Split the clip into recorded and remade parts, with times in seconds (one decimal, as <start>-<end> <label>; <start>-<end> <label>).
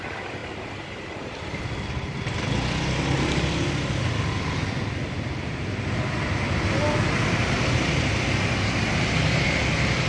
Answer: 0.0-10.1 recorded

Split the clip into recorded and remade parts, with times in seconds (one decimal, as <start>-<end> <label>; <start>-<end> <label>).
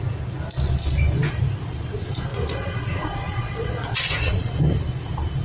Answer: 0.0-2.3 recorded; 2.3-4.5 remade; 4.5-5.4 recorded